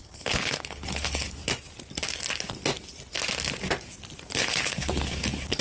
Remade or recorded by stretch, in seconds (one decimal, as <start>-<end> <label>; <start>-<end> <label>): 0.0-1.4 remade; 1.4-4.3 recorded; 4.3-5.6 remade